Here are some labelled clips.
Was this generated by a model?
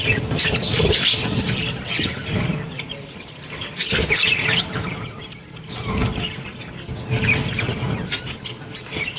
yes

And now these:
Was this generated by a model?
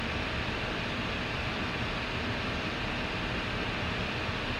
no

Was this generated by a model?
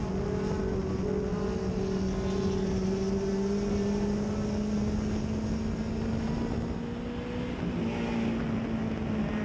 no